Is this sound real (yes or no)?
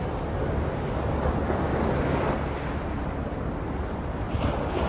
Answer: yes